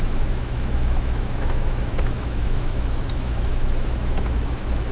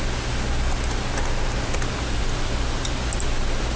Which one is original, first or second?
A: second